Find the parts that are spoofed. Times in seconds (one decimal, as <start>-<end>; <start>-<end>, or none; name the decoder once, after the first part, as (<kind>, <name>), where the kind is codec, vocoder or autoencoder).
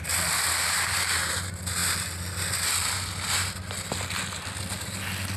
none